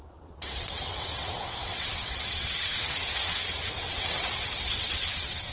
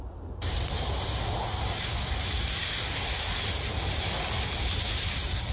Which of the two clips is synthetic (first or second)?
first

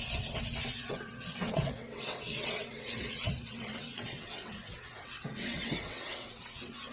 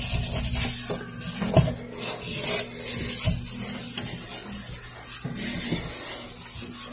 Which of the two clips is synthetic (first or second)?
first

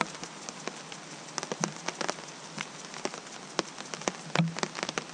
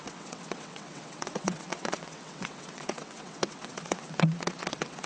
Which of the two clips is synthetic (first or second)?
second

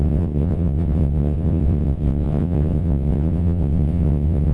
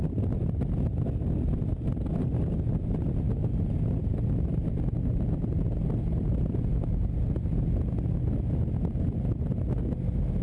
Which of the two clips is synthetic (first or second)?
first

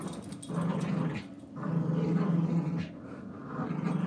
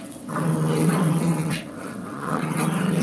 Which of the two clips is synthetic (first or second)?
second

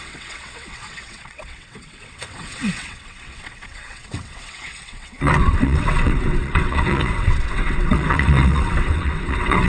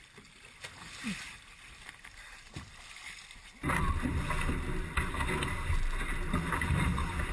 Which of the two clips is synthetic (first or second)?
first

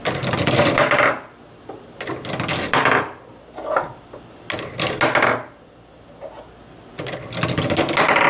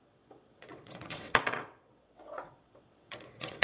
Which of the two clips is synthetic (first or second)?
second